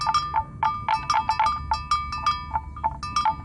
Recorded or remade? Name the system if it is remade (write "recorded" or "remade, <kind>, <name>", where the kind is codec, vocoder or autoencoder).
recorded